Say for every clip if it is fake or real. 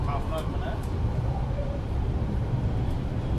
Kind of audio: real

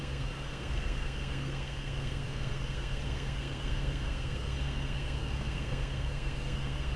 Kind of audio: fake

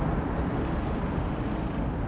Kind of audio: real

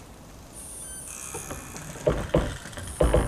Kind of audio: real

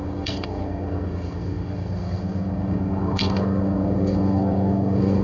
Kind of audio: fake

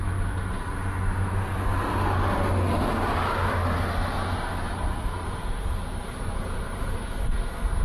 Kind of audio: real